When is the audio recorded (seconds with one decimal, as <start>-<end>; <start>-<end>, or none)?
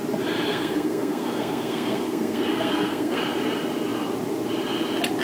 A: 0.0-0.5; 3.2-5.2